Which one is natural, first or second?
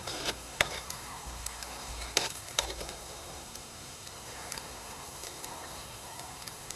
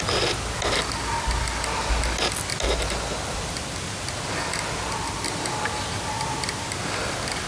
second